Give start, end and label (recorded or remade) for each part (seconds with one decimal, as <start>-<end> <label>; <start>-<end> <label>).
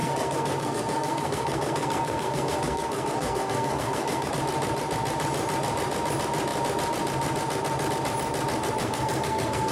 0.0-4.3 remade; 4.3-8.8 recorded; 8.8-9.7 remade